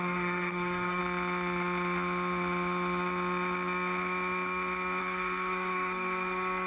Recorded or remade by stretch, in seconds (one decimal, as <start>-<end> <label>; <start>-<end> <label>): 0.0-1.0 remade; 1.0-5.0 recorded; 5.0-6.7 remade